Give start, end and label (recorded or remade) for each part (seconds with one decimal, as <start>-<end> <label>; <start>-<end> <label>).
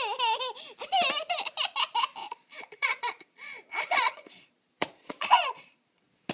0.0-2.2 recorded; 2.2-6.3 remade